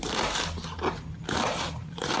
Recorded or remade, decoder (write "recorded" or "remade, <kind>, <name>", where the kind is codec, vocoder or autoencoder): remade, vocoder, BigVGAN v2